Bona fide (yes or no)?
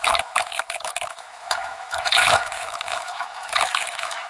no